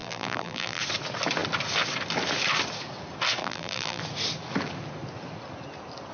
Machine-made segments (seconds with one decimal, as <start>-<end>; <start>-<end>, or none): 0.0-0.8; 3.4-4.0